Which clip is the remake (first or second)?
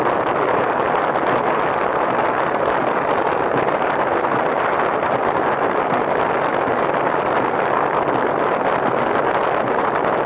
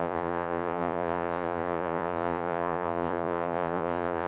second